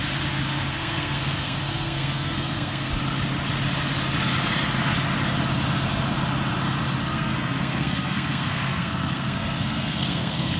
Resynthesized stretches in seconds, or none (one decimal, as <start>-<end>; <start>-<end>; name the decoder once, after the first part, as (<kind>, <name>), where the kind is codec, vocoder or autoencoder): 0.7-2.9 (codec, SNAC); 7.0-10.6